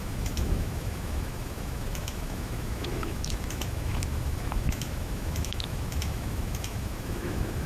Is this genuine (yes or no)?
no